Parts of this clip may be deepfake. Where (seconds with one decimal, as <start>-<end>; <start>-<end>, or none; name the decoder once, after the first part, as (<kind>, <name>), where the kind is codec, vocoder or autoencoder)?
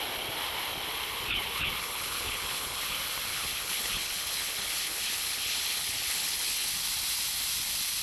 1.8-2.8 (codec, HILCodec); 3.3-6.7